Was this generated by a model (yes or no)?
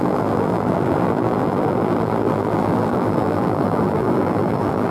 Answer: yes